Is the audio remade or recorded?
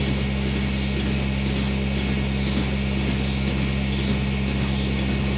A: recorded